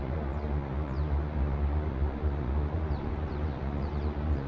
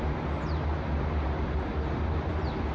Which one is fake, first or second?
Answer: first